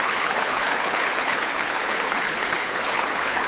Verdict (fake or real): fake